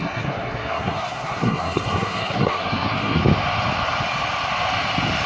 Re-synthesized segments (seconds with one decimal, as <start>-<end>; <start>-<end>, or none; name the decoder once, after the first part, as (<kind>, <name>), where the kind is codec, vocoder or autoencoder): 0.0-3.2 (codec, SNAC)